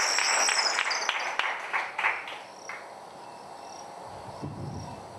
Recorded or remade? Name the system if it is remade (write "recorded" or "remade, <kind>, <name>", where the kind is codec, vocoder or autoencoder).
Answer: recorded